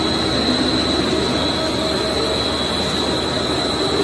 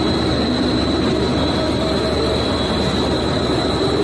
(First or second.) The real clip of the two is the first